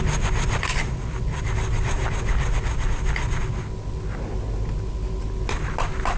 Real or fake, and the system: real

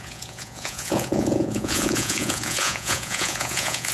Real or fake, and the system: fake, vocoder, Vocos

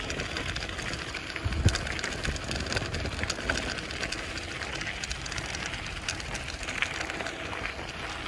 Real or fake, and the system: real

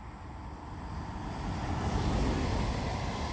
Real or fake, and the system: real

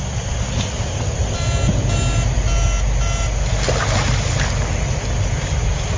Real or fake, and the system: real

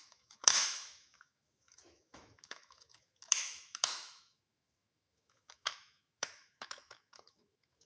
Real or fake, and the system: fake, autoencoder, DAC-VAE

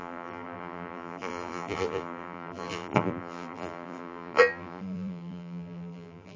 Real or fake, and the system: fake, vocoder, BigVGAN v2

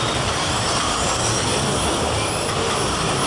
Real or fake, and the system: real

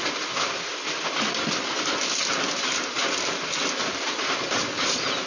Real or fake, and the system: real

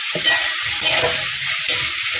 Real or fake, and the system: real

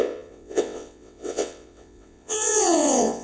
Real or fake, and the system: fake, vocoder, WaveNeXt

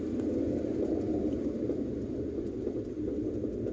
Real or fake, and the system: real